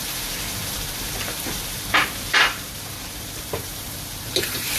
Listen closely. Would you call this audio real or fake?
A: fake